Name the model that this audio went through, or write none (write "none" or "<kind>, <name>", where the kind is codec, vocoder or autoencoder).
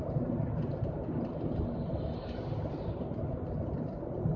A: none